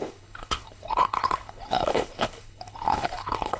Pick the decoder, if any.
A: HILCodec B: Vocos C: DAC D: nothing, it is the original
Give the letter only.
A